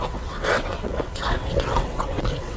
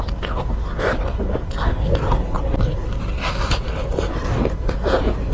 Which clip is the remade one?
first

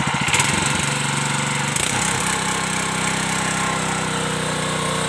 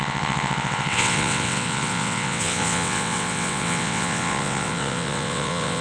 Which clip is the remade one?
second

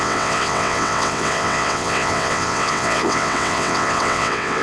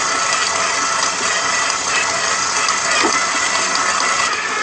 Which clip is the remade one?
first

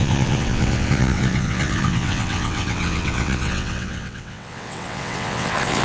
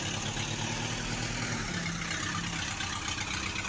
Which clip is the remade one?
first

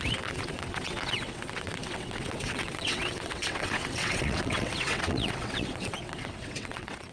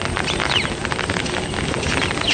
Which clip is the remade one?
first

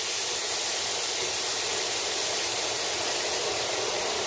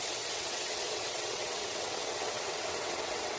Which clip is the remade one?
second